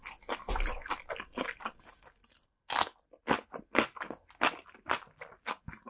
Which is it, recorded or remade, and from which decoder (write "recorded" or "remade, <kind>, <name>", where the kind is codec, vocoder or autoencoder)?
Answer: recorded